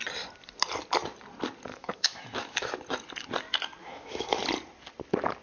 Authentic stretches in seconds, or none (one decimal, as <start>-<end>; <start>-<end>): 0.0-1.7; 2.7-3.8; 4.4-5.4